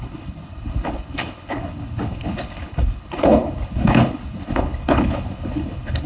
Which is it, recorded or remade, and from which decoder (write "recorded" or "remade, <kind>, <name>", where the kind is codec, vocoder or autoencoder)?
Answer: remade, codec, HILCodec